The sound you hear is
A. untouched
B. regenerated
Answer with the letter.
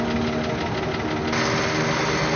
A